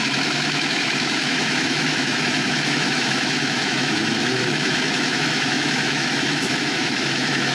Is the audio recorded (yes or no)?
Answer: no